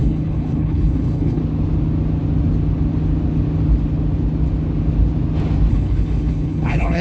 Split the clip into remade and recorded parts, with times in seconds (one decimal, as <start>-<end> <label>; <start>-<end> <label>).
0.0-1.4 remade; 1.4-5.7 recorded; 5.7-7.0 remade